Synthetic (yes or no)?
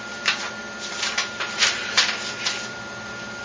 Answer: yes